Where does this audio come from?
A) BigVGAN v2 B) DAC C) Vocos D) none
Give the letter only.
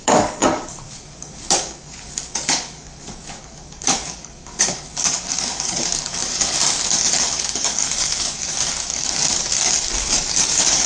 B